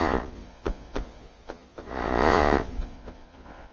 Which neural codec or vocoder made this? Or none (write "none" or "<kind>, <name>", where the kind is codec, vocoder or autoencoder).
vocoder, Vocos